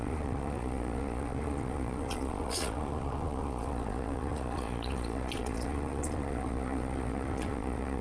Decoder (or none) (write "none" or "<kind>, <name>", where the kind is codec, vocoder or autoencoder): vocoder, Vocos